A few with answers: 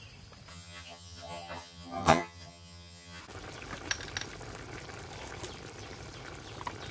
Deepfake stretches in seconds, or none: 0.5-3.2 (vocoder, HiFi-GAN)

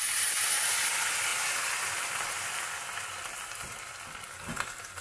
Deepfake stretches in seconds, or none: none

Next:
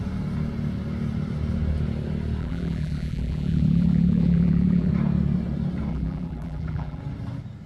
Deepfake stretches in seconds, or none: 2.4-4.9 (vocoder, BigVGAN v2); 5.9-7.0

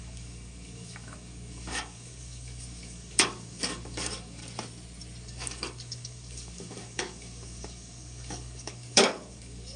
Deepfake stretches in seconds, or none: 0.0-4.4 (codec, DAC); 5.2-9.8